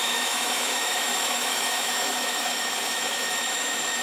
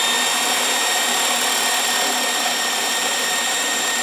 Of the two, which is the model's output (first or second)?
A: first